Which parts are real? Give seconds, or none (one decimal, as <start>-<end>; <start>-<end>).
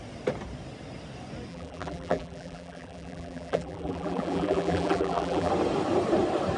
0.0-1.5; 5.5-6.6